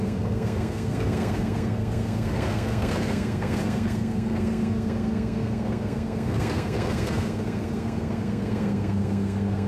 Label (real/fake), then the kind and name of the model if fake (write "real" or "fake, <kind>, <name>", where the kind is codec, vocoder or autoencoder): fake, codec, SNAC